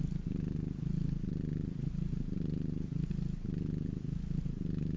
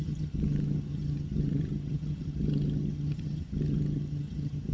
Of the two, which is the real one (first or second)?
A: first